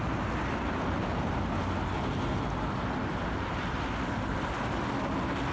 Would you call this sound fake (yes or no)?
no